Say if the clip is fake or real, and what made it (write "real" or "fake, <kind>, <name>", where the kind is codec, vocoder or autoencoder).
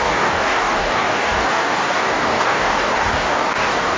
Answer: fake, codec, DAC